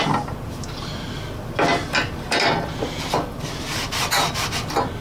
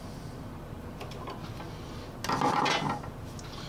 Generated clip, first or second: first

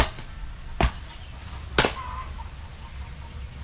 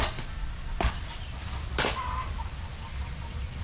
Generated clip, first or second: second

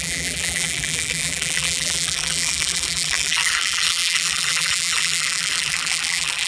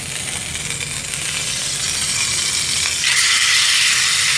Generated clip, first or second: first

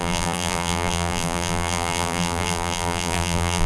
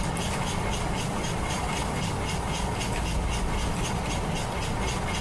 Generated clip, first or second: first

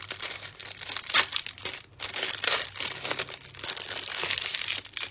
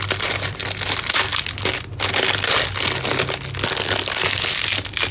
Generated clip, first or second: first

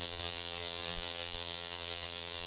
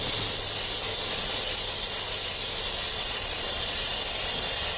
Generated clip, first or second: first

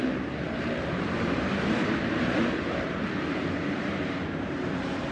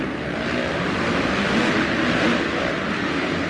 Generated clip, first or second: first